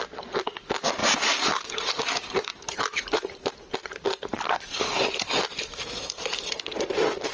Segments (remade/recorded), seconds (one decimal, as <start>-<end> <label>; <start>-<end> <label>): 0.0-1.0 recorded; 1.0-3.5 remade; 3.5-7.3 recorded